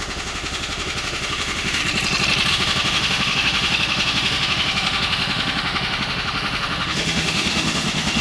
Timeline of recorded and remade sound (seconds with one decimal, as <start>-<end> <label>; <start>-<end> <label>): 0.0-1.8 remade; 1.8-2.5 recorded; 2.5-8.2 remade